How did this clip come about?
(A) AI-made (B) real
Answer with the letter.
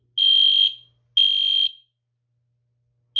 B